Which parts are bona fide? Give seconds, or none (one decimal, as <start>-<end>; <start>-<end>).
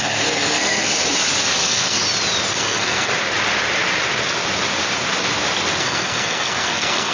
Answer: 0.9-1.6; 2.0-2.5; 3.1-5.8